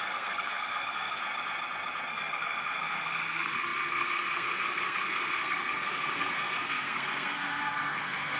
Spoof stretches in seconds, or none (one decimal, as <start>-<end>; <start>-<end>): 0.0-1.2; 2.1-8.4